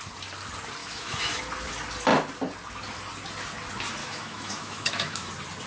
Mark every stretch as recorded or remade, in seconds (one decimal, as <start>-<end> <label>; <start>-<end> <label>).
0.0-0.8 recorded; 0.8-1.4 remade; 1.4-4.0 recorded; 4.0-5.3 remade; 5.3-5.7 recorded